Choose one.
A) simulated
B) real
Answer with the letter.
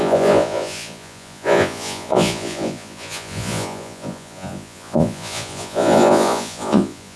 A